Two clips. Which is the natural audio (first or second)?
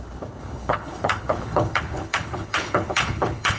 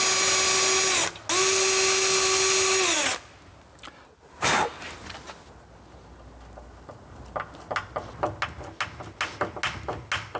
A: second